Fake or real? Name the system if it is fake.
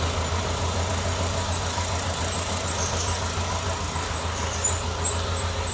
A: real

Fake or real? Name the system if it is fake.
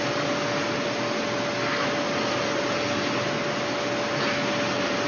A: real